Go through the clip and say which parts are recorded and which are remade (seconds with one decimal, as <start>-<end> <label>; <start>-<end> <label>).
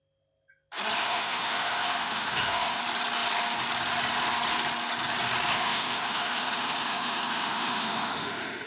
0.0-1.0 recorded; 1.0-2.8 remade; 2.8-5.5 recorded; 5.5-8.7 remade